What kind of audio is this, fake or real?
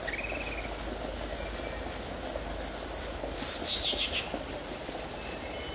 real